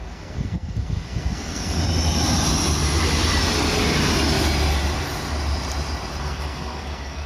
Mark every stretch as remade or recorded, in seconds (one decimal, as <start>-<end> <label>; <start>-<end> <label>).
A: 0.0-1.8 remade; 1.8-6.2 recorded; 6.2-7.3 remade